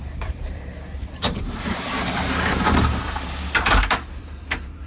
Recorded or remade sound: remade